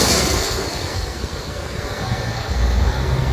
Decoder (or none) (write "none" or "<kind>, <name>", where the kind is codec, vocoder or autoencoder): codec, SNAC